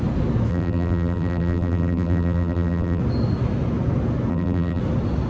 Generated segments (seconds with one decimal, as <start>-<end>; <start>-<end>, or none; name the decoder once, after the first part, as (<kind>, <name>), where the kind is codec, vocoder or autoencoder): 0.5-3.0 (vocoder, BigVGAN v2); 4.3-4.8